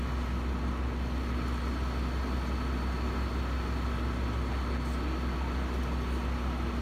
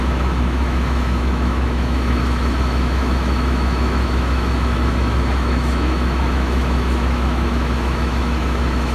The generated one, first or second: second